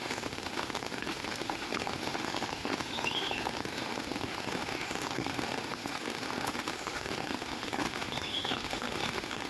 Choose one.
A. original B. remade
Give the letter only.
B